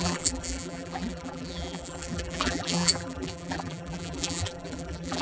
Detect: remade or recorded remade